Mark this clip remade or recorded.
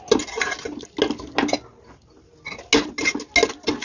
recorded